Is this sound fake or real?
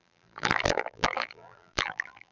fake